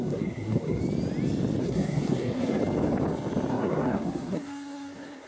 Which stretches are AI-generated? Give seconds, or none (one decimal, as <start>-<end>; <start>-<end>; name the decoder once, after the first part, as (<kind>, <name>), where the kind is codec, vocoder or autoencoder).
0.0-0.8 (codec, SNAC); 1.6-2.6; 3.5-5.3